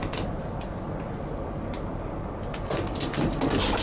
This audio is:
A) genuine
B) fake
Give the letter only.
A